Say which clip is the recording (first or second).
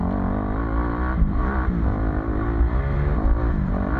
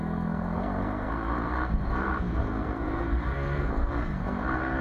first